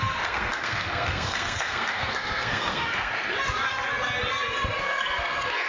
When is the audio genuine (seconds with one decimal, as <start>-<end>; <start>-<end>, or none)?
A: 3.1-4.8